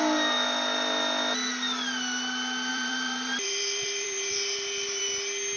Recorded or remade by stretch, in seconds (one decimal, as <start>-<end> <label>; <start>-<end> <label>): 0.0-2.7 recorded; 2.7-5.0 remade; 5.0-5.6 recorded